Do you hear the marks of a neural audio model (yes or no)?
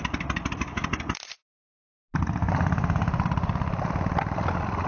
no